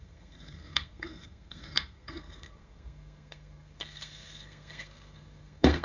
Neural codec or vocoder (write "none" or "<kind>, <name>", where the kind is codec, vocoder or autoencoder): codec, SNAC